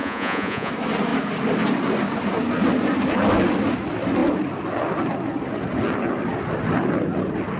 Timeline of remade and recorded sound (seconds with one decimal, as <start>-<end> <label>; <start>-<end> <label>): 0.0-0.7 remade; 0.7-7.6 recorded